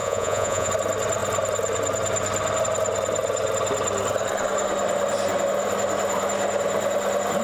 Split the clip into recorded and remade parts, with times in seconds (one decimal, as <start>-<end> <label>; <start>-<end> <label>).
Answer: 0.0-0.7 remade; 0.7-7.4 recorded